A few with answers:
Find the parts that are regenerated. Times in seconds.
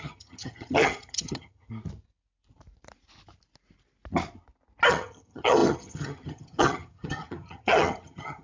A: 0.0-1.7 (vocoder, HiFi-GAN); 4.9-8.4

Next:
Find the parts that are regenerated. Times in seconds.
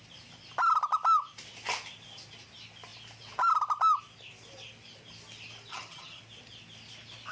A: 5.7-6.2 (vocoder, HiFi-GAN)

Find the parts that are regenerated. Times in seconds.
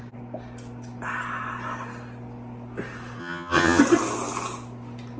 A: 3.2-3.8 (vocoder, HiFi-GAN)